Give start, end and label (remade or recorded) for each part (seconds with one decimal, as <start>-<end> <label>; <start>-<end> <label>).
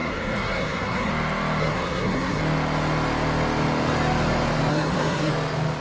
0.0-1.1 remade; 1.1-1.6 recorded; 1.6-2.4 remade; 2.4-4.7 recorded; 4.7-5.3 remade; 5.3-5.8 recorded